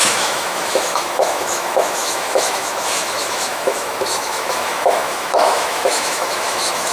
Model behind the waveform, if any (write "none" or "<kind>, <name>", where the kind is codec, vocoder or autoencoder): autoencoder, DAC-VAE